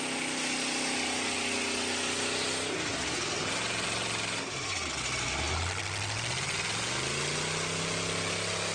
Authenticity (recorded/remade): recorded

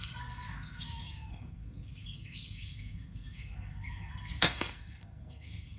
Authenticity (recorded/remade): remade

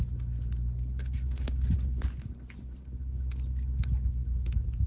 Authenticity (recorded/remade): recorded